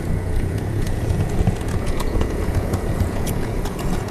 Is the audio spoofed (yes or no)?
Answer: yes